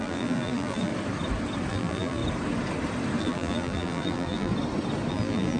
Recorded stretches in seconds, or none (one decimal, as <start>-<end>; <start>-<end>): 0.9-1.7; 2.2-3.2; 4.5-5.1